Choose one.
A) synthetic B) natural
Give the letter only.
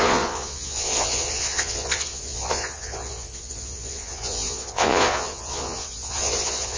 A